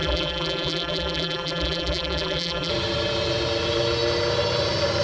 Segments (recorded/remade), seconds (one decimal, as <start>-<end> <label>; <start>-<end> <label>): 0.0-2.7 remade; 2.7-5.0 recorded